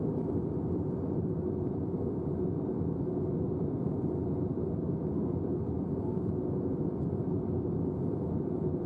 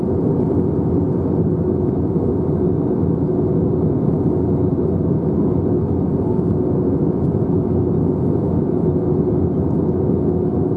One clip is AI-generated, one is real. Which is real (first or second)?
second